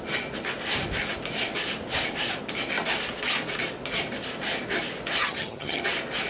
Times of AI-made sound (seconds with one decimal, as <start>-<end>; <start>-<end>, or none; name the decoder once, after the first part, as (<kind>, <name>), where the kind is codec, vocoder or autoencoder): 5.2-5.8 (vocoder, HiFi-GAN)